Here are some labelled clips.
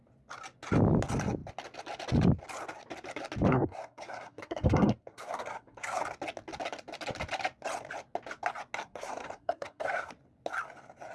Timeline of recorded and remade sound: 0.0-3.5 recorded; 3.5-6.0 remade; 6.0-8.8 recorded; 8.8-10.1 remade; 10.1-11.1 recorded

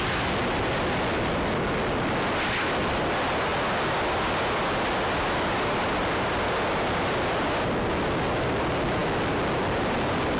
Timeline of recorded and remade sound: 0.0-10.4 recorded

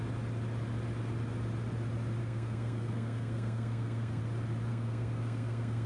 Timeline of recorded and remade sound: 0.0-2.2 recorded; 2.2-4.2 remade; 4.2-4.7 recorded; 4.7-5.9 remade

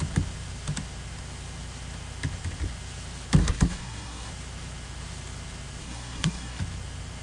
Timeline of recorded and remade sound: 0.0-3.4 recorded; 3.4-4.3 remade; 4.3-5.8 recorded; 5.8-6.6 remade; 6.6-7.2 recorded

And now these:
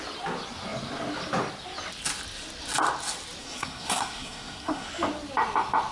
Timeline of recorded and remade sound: 0.0-3.4 recorded; 3.4-4.9 remade; 4.9-5.9 recorded

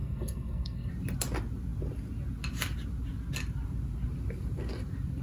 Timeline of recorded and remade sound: 0.0-0.9 remade; 0.9-5.2 recorded